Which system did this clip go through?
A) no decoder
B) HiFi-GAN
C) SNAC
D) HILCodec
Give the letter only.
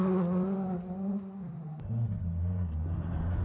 A